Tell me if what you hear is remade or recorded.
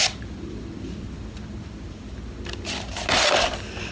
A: recorded